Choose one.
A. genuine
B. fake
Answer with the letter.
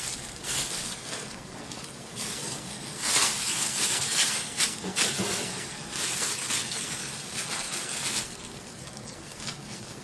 B